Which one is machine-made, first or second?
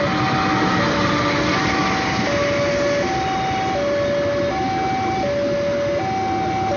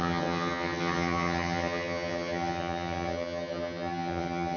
second